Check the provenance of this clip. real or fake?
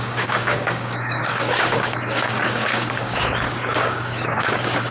fake